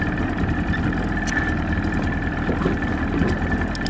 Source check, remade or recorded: recorded